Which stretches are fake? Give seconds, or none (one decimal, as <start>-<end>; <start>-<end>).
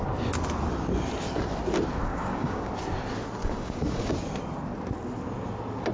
2.1-2.7; 3.4-4.1